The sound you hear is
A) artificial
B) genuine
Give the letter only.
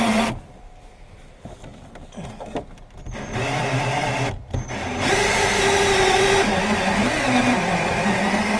B